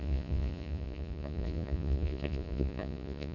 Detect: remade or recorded remade